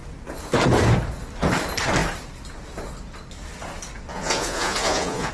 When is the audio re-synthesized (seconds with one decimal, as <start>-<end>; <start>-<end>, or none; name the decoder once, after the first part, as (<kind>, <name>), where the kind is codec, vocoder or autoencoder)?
4.1-5.3 (vocoder, Vocos)